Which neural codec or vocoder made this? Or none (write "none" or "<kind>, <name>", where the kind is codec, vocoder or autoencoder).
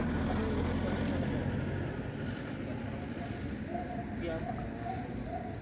none